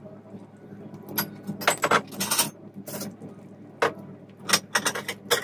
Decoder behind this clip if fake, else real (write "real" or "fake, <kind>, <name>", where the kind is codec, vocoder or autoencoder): real